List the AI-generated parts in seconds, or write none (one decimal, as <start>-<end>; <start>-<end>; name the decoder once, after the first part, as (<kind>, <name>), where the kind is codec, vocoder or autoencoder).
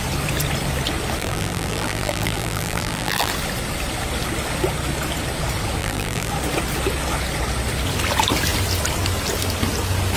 1.2-3.3 (vocoder, BigVGAN v2); 5.8-6.3